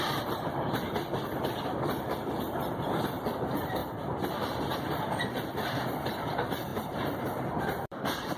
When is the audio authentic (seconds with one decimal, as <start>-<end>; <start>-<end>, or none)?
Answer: 3.8-4.3